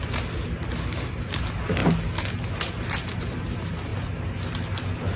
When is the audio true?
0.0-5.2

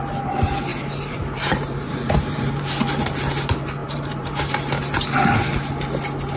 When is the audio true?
0.0-0.7; 2.6-3.8; 4.6-6.4

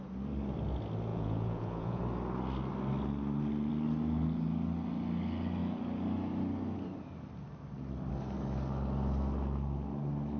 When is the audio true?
0.0-1.1; 2.0-10.4